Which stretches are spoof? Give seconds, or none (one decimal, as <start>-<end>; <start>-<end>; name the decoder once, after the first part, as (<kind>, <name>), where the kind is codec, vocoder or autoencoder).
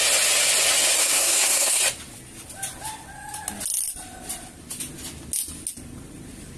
1.0-1.8 (codec, SNAC)